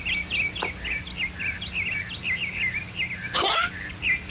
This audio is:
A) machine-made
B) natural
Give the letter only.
B